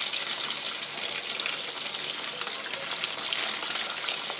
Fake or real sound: real